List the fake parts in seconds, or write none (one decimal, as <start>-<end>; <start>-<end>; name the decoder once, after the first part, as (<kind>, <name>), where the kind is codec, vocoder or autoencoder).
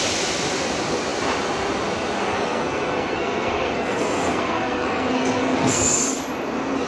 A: 2.2-6.2 (codec, SNAC)